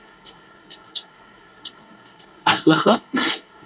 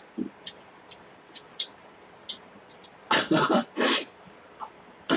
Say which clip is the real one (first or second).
second